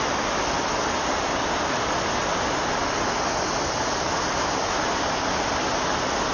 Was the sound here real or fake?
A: real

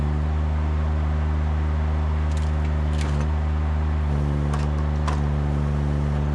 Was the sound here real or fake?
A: real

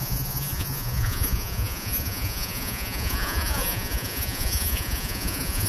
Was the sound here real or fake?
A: fake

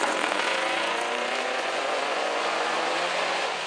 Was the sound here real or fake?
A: fake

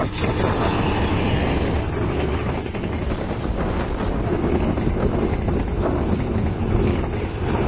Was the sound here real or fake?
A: real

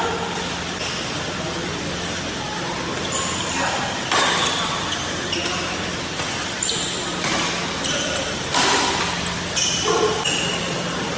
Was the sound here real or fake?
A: real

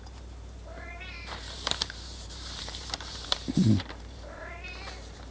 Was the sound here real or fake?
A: fake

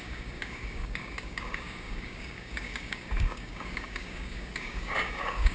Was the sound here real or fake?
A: fake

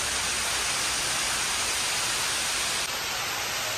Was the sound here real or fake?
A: real